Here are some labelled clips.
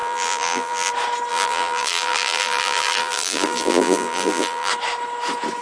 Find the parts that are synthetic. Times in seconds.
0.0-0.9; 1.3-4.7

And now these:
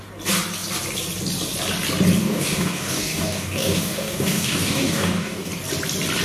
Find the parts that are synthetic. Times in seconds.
2.2-5.5

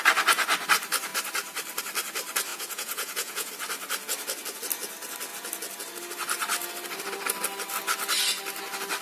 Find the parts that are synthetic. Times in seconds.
2.5-3.5

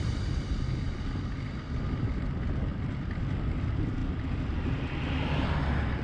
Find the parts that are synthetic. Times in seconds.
none

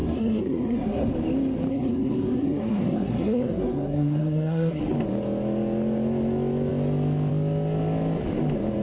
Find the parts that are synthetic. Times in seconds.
0.0-1.1; 1.7-4.8

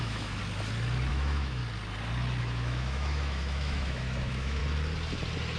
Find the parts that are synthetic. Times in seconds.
0.0-0.4; 1.1-1.6; 2.4-4.6